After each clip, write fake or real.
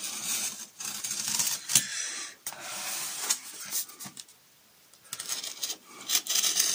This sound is real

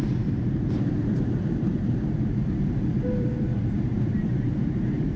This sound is fake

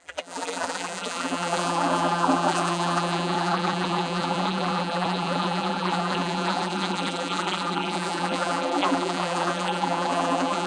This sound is fake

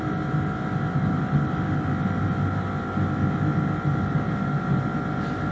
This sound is real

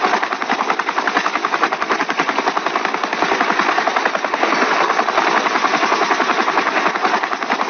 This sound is real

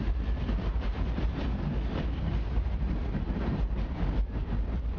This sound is fake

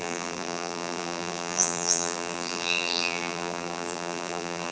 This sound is fake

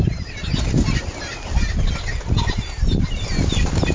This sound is real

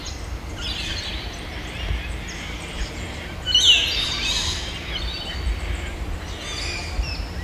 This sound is real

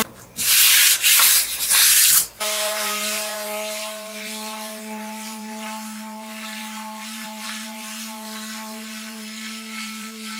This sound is fake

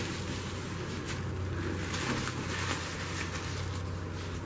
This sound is real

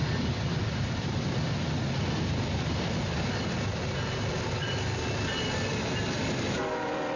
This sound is fake